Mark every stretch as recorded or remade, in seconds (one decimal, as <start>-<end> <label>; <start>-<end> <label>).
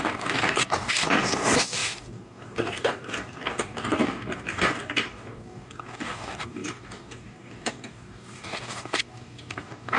0.0-10.0 remade